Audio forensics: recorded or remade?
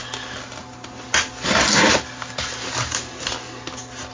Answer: recorded